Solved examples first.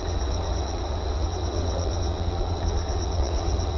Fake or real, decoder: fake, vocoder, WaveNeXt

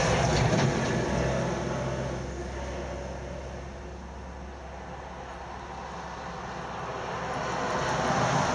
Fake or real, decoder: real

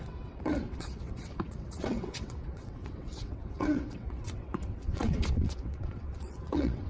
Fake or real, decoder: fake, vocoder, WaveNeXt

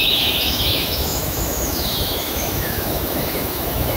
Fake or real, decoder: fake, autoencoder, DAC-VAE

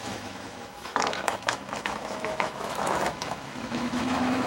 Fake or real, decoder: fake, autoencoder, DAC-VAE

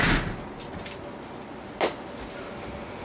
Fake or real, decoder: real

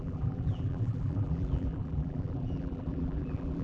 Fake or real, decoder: fake, vocoder, BigVGAN v2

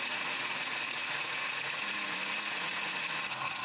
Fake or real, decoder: fake, vocoder, Vocos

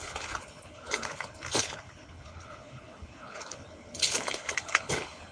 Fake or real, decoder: fake, codec, HILCodec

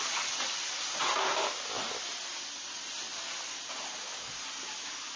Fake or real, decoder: real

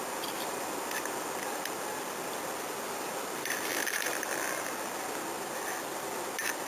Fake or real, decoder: fake, vocoder, BigVGAN v2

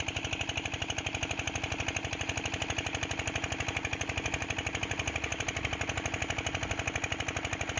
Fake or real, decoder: real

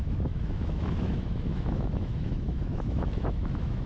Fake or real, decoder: fake, autoencoder, DAC-VAE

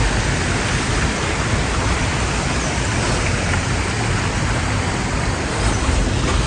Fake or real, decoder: real